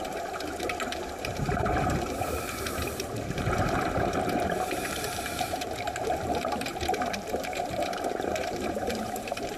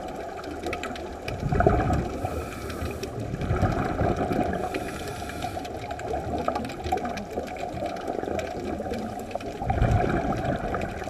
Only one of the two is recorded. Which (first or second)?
second